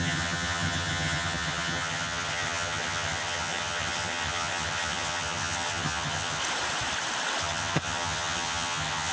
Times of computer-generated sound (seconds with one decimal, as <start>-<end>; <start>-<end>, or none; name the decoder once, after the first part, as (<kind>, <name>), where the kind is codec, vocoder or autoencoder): 0.0-6.4 (vocoder, HiFi-GAN); 7.4-9.1